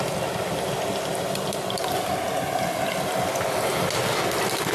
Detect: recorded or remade recorded